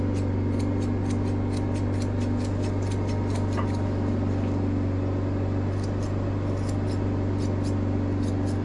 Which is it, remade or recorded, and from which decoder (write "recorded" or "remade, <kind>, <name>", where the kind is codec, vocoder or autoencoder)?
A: recorded